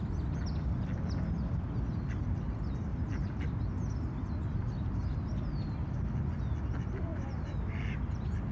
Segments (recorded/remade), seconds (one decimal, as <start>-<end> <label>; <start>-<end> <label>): 0.0-2.9 recorded; 2.9-3.6 remade; 3.6-7.1 recorded; 7.1-8.1 remade; 8.1-8.5 recorded